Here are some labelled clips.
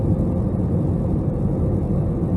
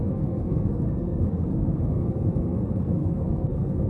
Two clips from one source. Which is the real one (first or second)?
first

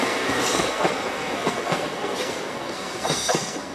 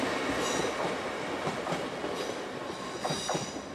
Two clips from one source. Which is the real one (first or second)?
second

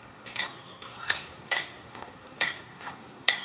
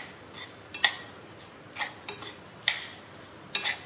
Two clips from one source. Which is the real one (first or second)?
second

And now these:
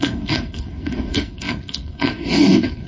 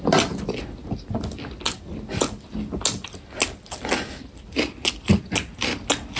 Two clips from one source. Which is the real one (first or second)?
second